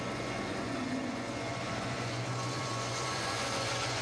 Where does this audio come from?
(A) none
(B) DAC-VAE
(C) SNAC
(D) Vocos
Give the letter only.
D